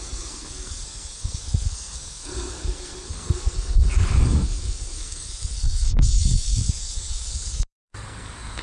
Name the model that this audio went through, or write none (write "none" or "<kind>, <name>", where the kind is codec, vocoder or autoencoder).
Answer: codec, SNAC